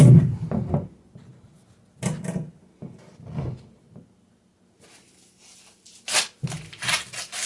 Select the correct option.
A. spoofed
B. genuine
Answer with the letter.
B